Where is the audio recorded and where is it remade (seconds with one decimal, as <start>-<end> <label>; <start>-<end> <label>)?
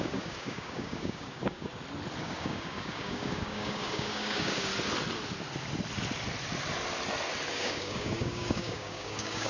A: 0.0-1.7 remade; 1.7-2.2 recorded; 2.2-4.7 remade; 4.7-7.5 recorded; 7.5-9.5 remade